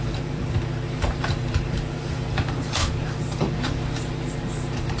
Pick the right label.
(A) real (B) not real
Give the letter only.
B